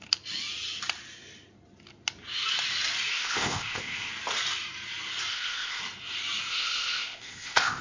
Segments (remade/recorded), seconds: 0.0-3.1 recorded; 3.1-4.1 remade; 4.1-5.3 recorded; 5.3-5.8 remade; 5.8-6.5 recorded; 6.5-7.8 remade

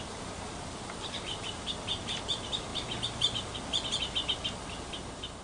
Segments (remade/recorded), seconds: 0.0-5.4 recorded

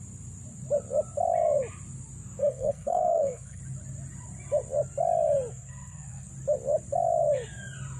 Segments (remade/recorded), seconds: 0.0-2.4 recorded; 2.4-3.6 remade; 3.6-5.5 recorded; 5.5-6.3 remade; 6.3-8.0 recorded

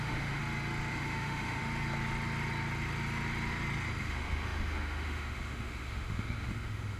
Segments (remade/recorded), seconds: 0.0-0.4 remade; 0.4-0.9 recorded; 0.9-1.6 remade; 1.6-4.0 recorded; 4.0-7.0 remade

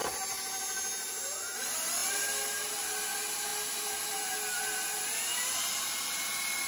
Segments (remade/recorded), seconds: 0.0-6.7 recorded